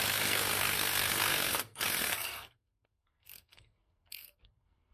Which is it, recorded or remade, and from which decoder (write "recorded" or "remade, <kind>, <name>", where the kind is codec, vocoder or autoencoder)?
remade, codec, SNAC